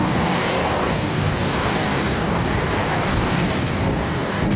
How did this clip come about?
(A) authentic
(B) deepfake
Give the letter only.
B